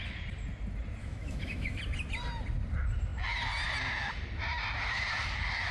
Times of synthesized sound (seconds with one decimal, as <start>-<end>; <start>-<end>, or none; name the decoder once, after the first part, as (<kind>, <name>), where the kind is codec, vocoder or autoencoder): 1.0-1.8 (autoencoder, DAC-VAE)